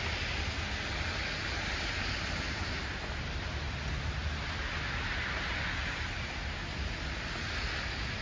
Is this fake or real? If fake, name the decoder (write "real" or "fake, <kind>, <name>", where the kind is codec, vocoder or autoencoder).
real